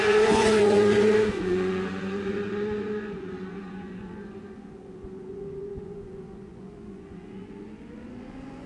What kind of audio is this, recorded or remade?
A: remade